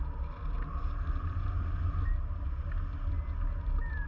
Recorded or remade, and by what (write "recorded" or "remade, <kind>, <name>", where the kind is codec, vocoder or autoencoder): recorded